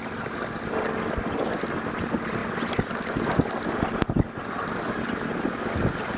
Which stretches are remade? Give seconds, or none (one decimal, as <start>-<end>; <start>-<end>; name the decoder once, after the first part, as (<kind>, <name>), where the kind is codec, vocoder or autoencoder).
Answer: none